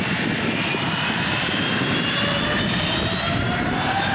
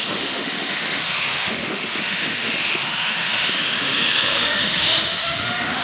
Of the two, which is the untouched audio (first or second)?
first